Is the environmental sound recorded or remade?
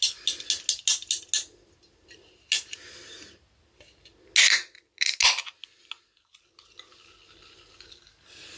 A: recorded